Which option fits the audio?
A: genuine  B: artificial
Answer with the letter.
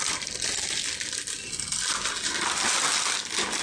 A